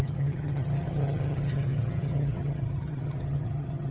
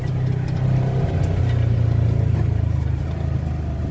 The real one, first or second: second